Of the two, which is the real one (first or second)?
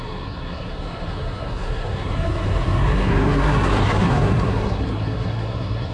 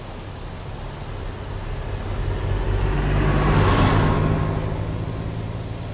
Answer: second